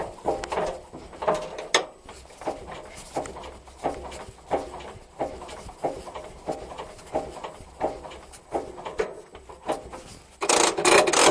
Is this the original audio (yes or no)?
yes